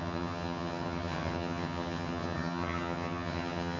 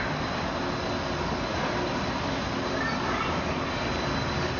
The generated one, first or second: first